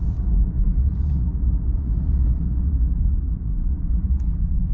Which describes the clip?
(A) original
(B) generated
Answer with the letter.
B